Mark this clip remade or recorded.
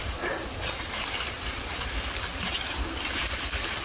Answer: recorded